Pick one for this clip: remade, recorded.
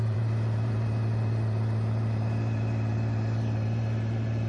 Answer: remade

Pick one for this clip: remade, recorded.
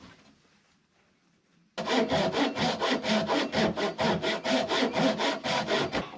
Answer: recorded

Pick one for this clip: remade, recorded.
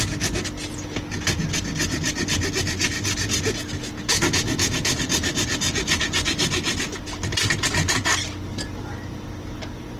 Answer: recorded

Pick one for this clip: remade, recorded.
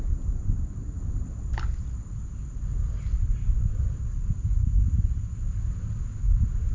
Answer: recorded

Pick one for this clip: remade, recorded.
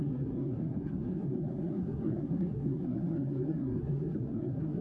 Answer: remade